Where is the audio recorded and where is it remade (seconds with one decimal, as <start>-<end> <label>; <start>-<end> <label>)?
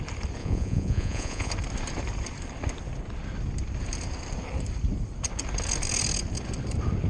0.0-0.4 recorded; 0.4-1.5 remade; 1.5-7.1 recorded